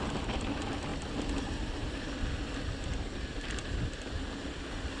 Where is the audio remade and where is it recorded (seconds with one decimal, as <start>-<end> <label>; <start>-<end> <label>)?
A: 0.0-5.0 recorded